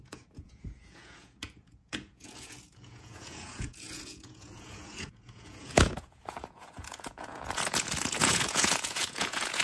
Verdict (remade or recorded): remade